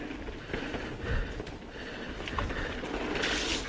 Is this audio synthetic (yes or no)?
no